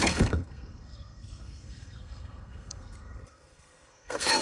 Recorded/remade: remade